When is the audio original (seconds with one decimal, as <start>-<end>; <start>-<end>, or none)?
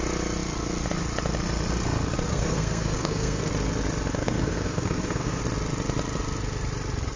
0.0-2.3; 3.5-4.2; 5.4-7.2